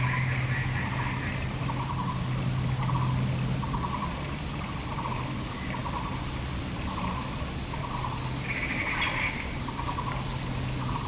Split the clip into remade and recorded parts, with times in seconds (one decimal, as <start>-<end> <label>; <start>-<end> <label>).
0.0-11.1 recorded